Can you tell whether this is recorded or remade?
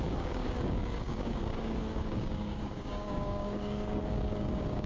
remade